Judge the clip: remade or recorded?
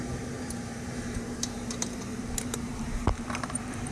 remade